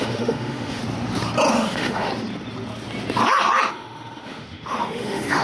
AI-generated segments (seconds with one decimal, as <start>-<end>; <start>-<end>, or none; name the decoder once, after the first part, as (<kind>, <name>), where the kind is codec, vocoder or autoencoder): 0.0-0.8 (autoencoder, DAC-VAE); 1.5-2.1; 3.7-5.4